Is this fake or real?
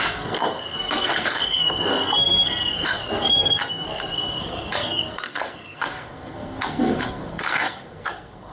fake